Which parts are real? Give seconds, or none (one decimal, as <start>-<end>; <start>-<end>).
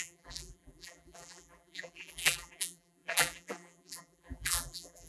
none